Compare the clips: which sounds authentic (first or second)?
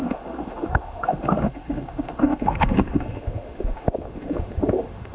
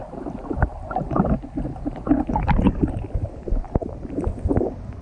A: second